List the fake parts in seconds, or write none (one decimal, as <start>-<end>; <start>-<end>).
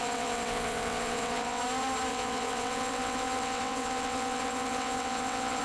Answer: 0.0-1.6; 2.1-5.6